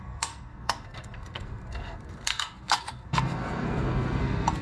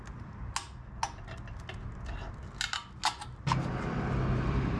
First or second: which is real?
second